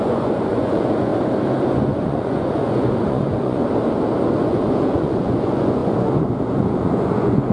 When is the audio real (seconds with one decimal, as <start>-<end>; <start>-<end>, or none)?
1.1-1.7; 3.6-4.3